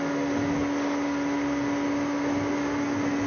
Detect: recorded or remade recorded